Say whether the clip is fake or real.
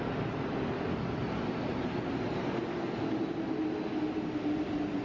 real